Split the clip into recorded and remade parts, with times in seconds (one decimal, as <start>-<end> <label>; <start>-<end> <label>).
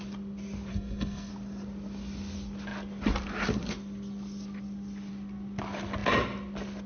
0.0-0.7 recorded; 0.7-1.3 remade; 1.3-6.9 recorded